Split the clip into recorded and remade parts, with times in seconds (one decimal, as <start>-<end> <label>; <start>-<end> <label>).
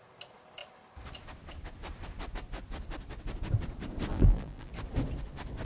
0.0-4.1 recorded; 4.1-4.7 remade; 4.7-5.6 recorded